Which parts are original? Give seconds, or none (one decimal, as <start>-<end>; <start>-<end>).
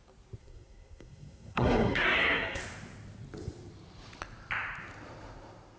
0.0-0.4; 2.6-5.8